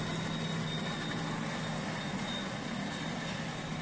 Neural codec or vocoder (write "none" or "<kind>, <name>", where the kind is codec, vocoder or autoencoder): none